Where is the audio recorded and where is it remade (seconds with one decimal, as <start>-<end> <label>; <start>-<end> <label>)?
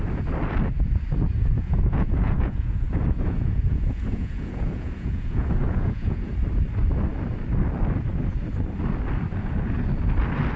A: 0.0-1.3 recorded; 1.3-6.3 remade; 6.3-10.6 recorded